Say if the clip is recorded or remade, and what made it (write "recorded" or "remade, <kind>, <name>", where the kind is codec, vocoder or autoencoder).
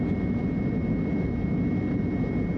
recorded